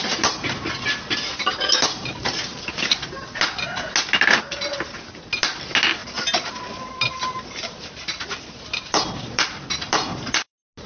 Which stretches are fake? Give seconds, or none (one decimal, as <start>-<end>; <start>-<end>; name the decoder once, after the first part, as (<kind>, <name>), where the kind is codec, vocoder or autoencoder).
6.0-10.5 (vocoder, BigVGAN v2)